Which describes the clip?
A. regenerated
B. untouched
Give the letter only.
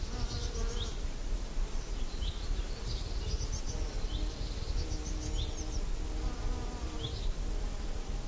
B